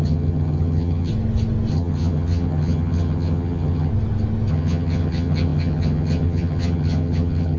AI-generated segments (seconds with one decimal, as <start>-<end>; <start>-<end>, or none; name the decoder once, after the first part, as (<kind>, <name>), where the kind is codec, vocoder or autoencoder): 0.0-1.1 (vocoder, HiFi-GAN); 1.7-3.9; 4.5-7.6